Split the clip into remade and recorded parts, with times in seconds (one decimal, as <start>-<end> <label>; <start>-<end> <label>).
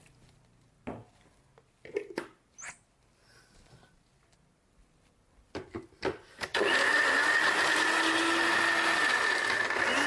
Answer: 0.0-10.1 recorded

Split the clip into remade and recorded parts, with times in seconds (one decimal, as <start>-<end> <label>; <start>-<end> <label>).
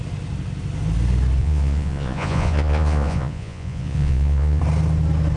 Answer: 0.0-1.4 recorded; 1.4-4.6 remade; 4.6-5.4 recorded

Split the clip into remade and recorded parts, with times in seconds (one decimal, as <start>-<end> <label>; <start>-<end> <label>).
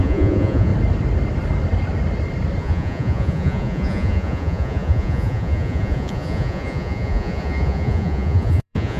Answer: 0.0-0.7 remade; 0.7-2.6 recorded; 2.6-9.0 remade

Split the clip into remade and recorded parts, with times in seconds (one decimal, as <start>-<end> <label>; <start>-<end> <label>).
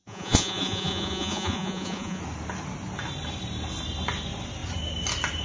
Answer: 0.0-2.2 remade; 2.2-5.4 recorded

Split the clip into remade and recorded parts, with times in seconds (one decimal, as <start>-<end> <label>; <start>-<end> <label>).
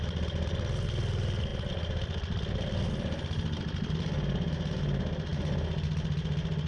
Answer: 0.0-6.7 recorded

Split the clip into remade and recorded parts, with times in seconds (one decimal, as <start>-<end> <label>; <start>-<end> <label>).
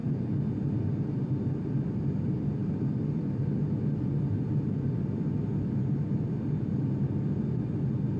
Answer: 0.0-8.2 recorded